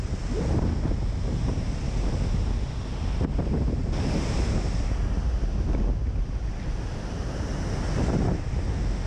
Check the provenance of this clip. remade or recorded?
recorded